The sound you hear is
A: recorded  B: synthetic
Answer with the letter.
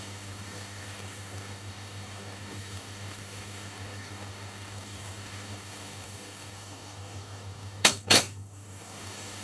B